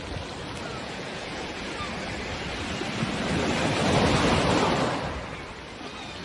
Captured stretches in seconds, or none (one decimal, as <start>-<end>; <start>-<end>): 0.0-0.7; 1.7-6.2